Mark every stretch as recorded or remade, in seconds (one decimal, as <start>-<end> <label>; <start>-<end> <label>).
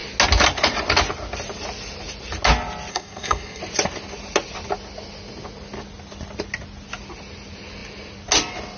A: 0.0-2.9 recorded; 2.9-3.6 remade; 3.6-8.8 recorded